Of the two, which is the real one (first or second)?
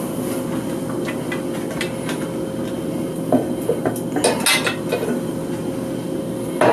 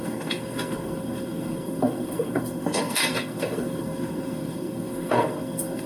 first